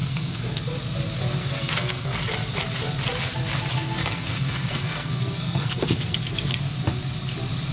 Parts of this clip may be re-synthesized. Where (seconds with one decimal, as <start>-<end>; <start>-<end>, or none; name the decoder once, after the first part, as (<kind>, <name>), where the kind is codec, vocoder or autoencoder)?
0.0-0.6 (codec, SNAC); 1.4-2.2; 3.7-6.6